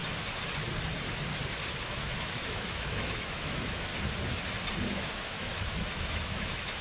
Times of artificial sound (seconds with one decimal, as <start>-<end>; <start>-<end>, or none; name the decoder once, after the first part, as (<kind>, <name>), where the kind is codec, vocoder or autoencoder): 1.8-3.9 (autoencoder, DAC-VAE); 4.9-6.8